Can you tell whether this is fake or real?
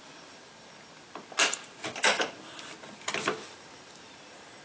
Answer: real